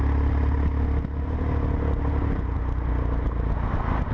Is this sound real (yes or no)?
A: yes